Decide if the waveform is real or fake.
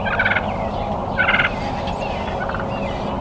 real